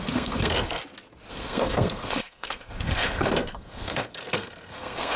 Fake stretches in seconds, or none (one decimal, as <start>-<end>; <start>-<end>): 0.0-0.8; 1.3-5.2